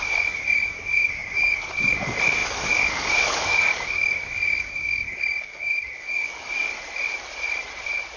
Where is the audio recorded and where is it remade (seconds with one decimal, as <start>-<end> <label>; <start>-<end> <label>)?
0.0-6.7 remade; 6.7-8.2 recorded